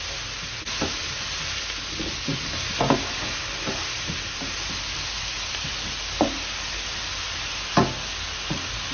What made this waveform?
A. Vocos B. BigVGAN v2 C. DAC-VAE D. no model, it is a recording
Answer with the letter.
D